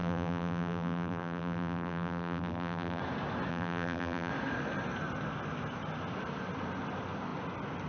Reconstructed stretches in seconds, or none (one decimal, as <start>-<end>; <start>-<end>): 0.0-3.0; 3.5-4.3